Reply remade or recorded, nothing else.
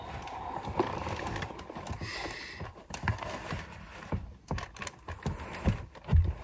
recorded